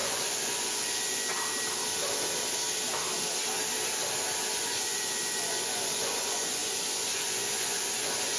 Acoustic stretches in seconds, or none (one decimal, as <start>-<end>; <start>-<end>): 1.3-4.5